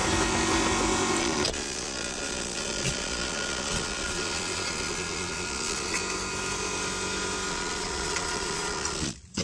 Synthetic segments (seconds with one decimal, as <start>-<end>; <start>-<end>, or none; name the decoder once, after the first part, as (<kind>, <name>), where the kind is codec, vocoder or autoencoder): 1.2-6.0 (vocoder, Vocos); 7.5-9.4